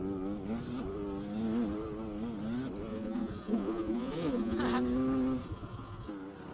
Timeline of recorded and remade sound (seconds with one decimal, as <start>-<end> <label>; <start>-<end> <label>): 0.0-2.9 recorded; 2.9-4.6 remade; 4.6-5.4 recorded; 5.4-6.1 remade; 6.1-6.5 recorded